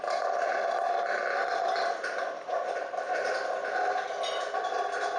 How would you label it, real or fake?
real